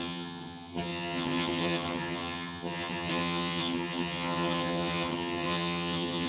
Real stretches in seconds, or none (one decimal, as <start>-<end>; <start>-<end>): none